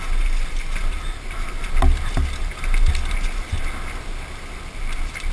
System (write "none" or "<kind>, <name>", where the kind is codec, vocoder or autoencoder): none